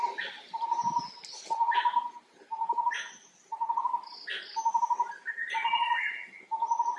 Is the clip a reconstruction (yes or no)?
no